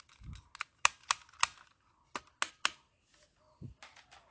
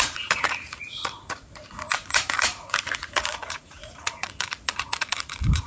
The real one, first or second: first